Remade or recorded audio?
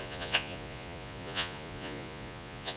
remade